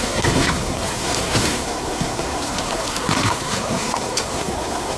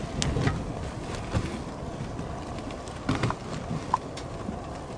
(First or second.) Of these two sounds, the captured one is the second